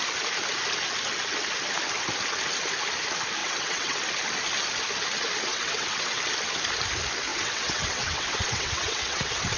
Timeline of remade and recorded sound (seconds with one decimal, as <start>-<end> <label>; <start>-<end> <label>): 0.0-3.4 recorded; 3.4-4.0 remade; 4.0-5.5 recorded; 5.5-6.2 remade; 6.2-7.3 recorded; 7.3-9.6 remade